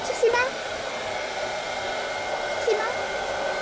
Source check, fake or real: real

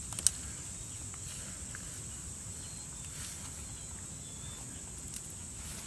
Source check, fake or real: real